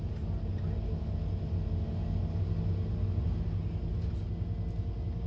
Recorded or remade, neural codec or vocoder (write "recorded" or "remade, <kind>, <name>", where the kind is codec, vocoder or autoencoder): recorded